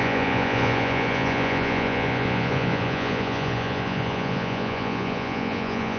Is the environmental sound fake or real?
fake